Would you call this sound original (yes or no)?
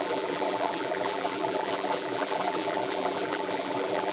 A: no